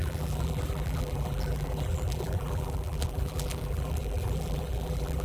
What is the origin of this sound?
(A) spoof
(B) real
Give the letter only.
A